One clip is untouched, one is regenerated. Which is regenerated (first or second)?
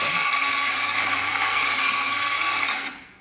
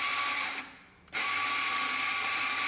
first